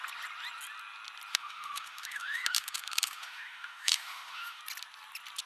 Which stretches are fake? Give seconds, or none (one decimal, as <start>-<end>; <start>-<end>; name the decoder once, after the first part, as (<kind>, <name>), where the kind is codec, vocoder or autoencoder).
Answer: 1.3-4.6 (autoencoder, DAC-VAE)